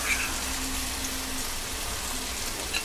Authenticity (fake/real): real